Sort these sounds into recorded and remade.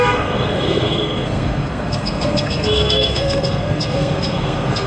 remade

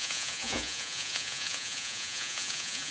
remade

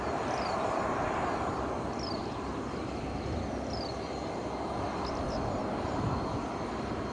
recorded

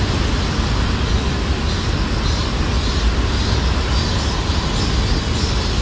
recorded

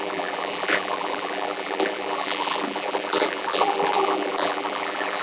remade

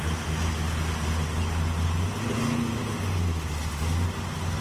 recorded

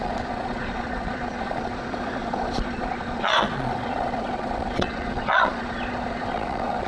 remade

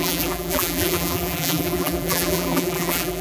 remade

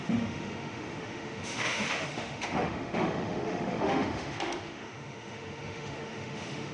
remade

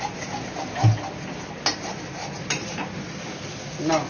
recorded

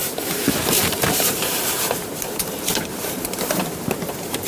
remade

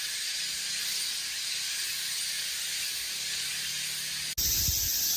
recorded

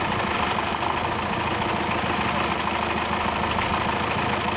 recorded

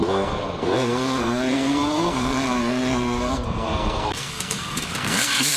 remade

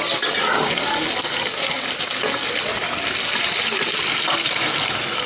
recorded